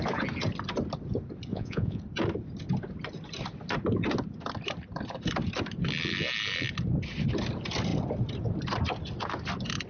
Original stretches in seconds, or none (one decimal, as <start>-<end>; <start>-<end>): 0.0-1.5; 2.0-9.9